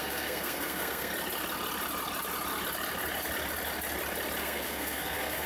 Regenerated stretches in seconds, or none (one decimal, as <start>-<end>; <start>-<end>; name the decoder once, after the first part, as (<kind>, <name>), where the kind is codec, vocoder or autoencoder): 0.0-1.1 (codec, SNAC); 4.4-5.5